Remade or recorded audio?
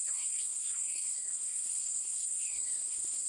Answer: remade